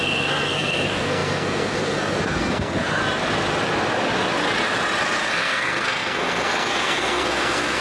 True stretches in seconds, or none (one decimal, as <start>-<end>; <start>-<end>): 3.0-5.2